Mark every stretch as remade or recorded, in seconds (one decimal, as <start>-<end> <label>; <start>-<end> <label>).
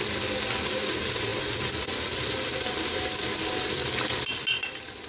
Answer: 0.0-5.1 recorded